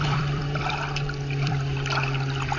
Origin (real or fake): fake